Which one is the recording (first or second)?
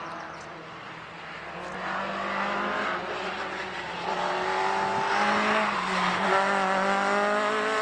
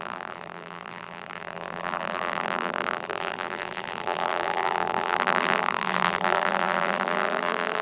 first